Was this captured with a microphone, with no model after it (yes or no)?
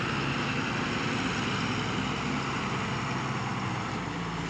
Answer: yes